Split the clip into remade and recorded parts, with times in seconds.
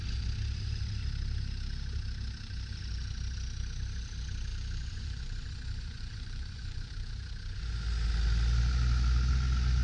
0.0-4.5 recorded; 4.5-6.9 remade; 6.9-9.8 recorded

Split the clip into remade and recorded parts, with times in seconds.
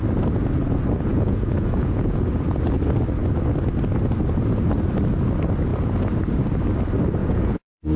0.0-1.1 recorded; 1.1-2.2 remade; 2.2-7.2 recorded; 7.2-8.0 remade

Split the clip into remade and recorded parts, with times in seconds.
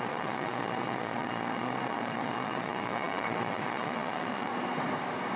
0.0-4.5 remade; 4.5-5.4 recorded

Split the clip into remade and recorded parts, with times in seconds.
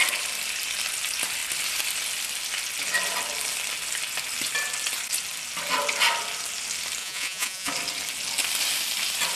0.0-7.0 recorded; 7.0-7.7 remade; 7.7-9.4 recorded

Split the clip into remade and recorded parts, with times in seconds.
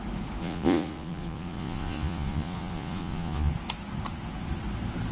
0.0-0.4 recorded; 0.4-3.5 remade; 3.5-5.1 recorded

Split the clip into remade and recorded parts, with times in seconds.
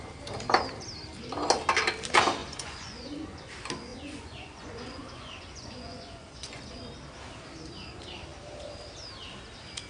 0.0-2.4 recorded; 2.4-3.5 remade; 3.5-3.9 recorded; 3.9-6.8 remade; 6.8-9.9 recorded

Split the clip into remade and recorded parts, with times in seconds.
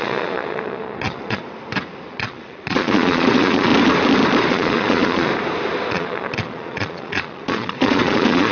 0.0-1.4 remade; 1.4-2.1 recorded; 2.1-3.7 remade; 3.7-4.5 recorded; 4.5-5.3 remade; 5.3-5.9 recorded; 5.9-8.5 remade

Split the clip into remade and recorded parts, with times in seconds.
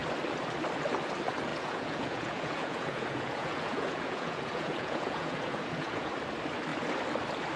0.0-1.5 recorded; 1.5-6.1 remade; 6.1-7.6 recorded